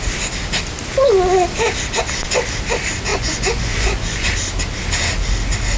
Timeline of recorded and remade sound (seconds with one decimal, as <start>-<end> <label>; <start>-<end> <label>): 0.0-3.1 recorded; 3.1-4.3 remade; 4.3-5.8 recorded